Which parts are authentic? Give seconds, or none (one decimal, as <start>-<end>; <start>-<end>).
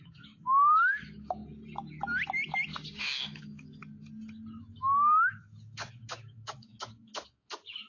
1.4-3.0; 3.8-4.6